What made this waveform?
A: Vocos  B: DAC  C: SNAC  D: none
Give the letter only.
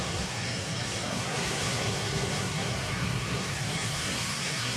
C